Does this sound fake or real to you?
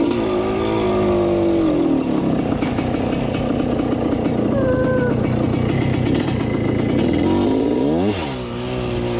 real